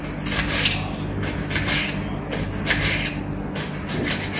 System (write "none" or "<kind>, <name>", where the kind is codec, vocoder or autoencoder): none